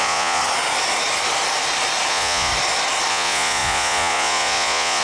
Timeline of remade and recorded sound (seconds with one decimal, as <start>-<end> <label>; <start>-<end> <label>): 0.0-0.4 remade; 0.4-2.1 recorded; 2.1-2.5 remade; 2.5-3.1 recorded; 3.1-5.0 remade